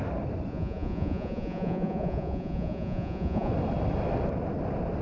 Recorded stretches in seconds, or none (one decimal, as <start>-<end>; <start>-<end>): 0.0-0.5; 3.5-5.0